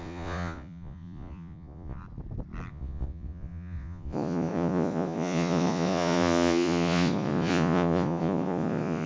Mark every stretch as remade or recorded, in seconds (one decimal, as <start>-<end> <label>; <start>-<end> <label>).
0.0-2.0 remade; 2.0-2.7 recorded; 2.7-9.1 remade